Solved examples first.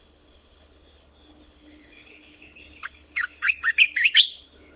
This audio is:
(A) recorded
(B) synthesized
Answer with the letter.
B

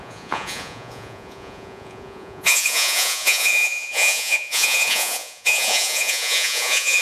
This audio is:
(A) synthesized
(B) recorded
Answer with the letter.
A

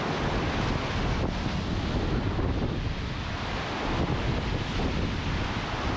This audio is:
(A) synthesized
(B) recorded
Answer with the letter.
B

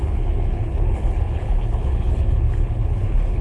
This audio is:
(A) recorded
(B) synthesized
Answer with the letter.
B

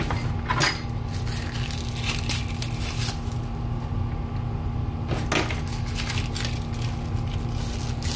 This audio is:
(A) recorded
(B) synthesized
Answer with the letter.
A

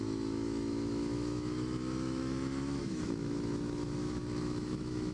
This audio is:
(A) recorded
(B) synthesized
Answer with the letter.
B